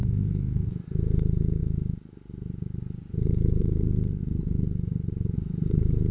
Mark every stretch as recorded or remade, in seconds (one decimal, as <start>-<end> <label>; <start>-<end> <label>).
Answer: 0.0-0.7 remade; 0.7-6.1 recorded